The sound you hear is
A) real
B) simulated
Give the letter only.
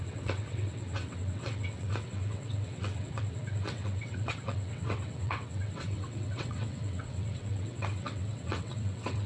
B